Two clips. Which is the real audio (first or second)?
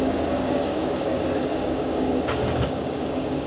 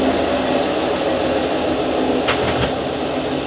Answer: second